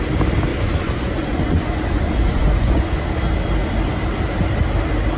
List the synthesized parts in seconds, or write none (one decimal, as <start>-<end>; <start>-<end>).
0.5-3.0